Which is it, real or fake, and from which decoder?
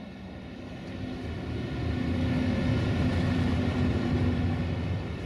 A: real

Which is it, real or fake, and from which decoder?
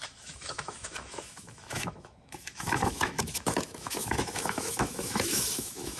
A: fake, autoencoder, DAC-VAE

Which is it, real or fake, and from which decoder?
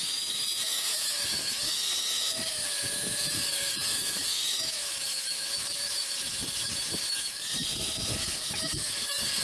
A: fake, autoencoder, DAC-VAE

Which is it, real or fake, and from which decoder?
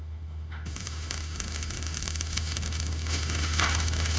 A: fake, autoencoder, DAC-VAE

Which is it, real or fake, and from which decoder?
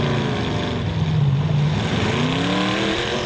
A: real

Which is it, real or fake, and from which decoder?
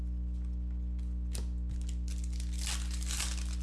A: real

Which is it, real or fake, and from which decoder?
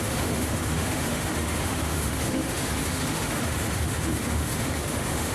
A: fake, autoencoder, DAC-VAE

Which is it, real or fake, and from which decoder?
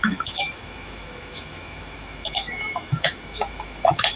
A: fake, autoencoder, DAC-VAE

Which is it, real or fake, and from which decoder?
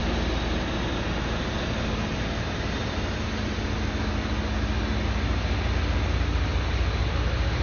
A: real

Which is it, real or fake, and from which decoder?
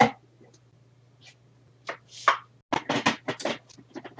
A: real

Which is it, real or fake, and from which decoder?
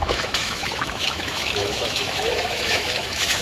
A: fake, autoencoder, DAC-VAE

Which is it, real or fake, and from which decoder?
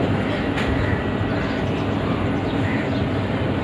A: real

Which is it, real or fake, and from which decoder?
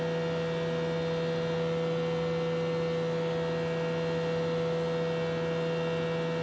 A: real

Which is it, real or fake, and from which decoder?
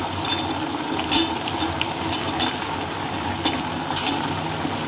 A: real